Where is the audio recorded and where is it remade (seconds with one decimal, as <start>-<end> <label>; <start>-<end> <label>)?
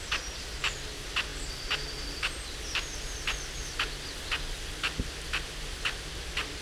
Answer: 0.0-6.6 recorded